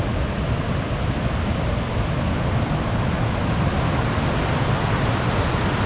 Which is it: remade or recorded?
recorded